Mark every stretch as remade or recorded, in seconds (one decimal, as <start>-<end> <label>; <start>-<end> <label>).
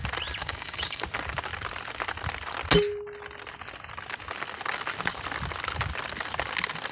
0.0-0.4 recorded; 0.4-1.0 remade; 1.0-6.9 recorded